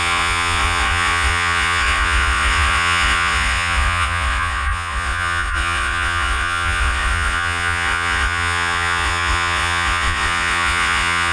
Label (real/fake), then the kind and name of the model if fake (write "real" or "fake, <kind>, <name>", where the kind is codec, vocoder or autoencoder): fake, vocoder, Vocos